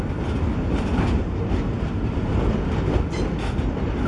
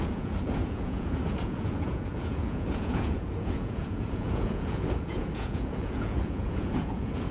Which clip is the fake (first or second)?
second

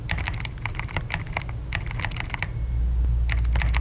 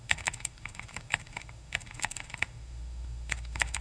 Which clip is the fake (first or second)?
second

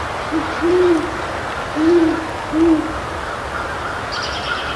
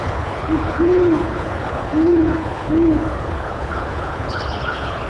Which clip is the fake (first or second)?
second